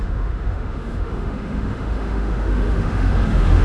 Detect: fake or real fake